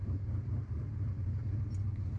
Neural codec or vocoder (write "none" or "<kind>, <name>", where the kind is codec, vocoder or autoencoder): vocoder, BigVGAN v2